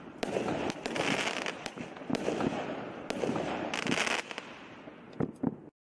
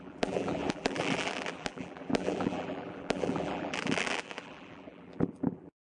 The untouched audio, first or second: first